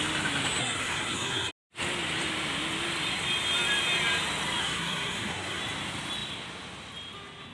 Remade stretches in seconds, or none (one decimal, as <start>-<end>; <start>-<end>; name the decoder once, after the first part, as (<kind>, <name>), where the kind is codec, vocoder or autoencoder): 0.6-1.5 (codec, SNAC); 4.6-5.6